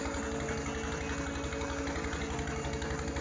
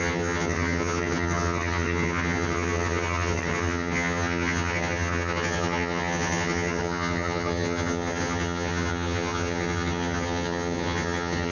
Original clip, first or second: first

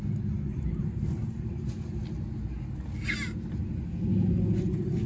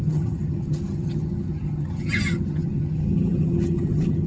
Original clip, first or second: first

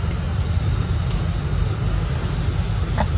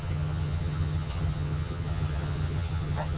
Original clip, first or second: first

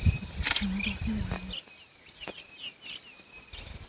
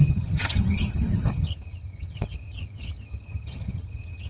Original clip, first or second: first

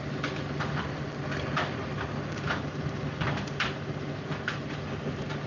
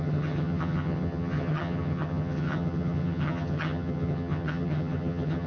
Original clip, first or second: first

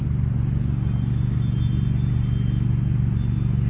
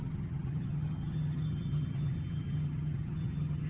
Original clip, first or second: first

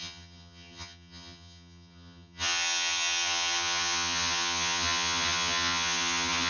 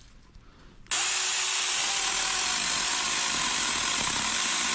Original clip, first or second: second